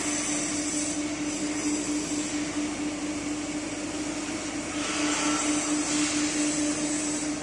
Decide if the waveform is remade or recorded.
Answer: recorded